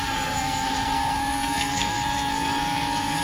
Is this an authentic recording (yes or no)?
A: no